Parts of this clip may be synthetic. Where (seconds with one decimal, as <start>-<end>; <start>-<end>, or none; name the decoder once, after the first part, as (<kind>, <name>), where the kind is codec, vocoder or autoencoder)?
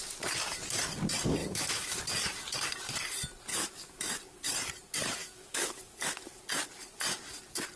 1.4-2.0 (autoencoder, DAC-VAE); 3.5-4.2; 5.2-6.3